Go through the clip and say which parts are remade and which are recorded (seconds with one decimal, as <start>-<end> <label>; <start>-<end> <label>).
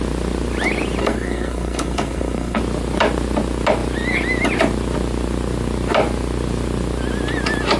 0.0-1.0 recorded; 1.0-2.6 remade; 2.6-7.8 recorded